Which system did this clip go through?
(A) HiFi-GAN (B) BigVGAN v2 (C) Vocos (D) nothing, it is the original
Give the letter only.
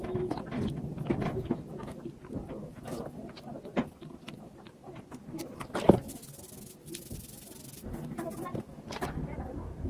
D